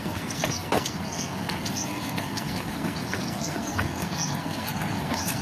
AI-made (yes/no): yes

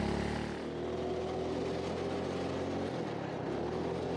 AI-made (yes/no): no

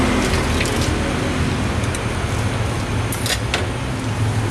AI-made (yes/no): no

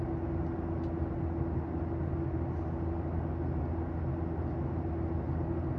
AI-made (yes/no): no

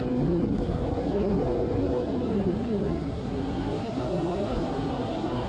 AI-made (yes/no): yes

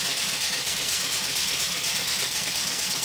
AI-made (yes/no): yes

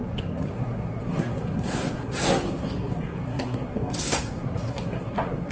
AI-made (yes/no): yes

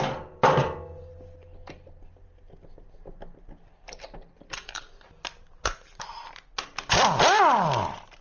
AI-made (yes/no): no